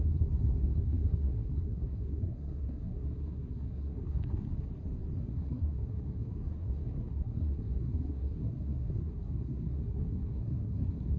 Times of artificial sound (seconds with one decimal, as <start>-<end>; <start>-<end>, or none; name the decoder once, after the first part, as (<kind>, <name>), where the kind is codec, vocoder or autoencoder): 0.0-4.7 (codec, SNAC); 5.2-11.2